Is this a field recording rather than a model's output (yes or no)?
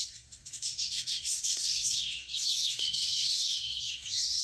no